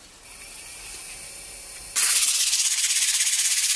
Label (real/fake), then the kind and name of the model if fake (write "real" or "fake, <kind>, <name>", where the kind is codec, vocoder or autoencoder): real